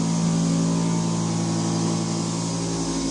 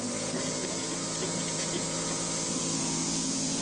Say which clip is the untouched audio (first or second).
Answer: first